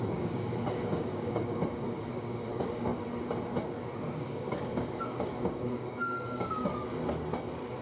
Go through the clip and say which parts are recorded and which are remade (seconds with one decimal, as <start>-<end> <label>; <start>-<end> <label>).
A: 0.0-2.9 remade; 2.9-4.0 recorded; 4.0-6.7 remade; 6.7-7.8 recorded